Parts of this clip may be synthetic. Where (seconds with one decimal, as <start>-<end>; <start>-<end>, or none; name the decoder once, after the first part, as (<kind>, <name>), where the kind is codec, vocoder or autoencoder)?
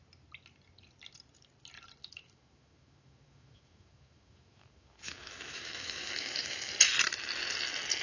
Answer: 2.0-6.7 (autoencoder, DAC-VAE)